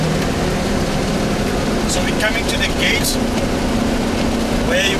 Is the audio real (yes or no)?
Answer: yes